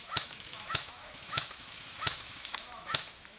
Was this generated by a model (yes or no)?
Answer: yes